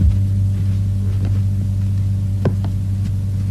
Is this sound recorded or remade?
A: recorded